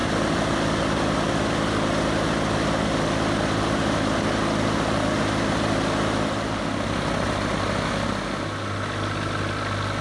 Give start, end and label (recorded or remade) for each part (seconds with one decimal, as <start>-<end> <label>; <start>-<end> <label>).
0.0-10.0 recorded